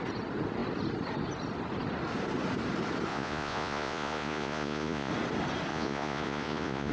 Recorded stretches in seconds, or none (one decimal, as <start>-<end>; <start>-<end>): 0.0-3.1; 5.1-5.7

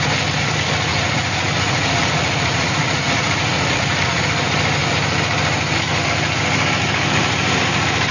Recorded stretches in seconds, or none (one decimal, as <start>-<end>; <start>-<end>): 0.0-0.9; 4.2-8.1

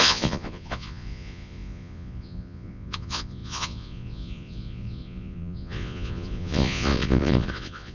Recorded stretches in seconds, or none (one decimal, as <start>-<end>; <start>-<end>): none